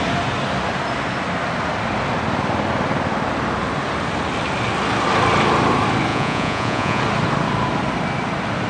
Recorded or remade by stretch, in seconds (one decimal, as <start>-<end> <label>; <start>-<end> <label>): 0.0-6.1 recorded; 6.1-7.0 remade; 7.0-8.7 recorded